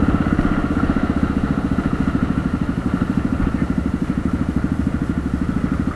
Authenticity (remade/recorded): recorded